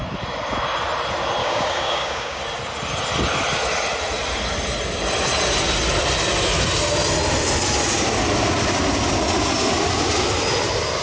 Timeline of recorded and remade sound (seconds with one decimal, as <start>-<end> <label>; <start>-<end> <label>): 0.0-1.4 recorded; 1.4-2.4 remade; 2.4-11.0 recorded